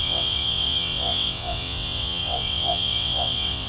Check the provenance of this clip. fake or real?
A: fake